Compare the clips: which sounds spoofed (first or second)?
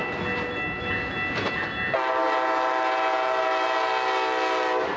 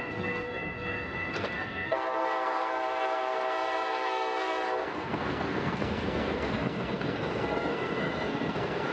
second